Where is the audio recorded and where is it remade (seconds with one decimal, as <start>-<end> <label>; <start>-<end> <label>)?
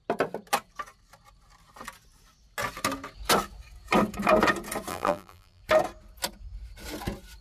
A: 0.0-4.9 recorded; 4.9-5.6 remade; 5.6-7.4 recorded